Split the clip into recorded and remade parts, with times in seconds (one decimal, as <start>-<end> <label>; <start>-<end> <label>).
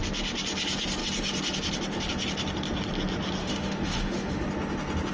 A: 0.0-3.4 recorded; 3.4-4.4 remade; 4.4-5.1 recorded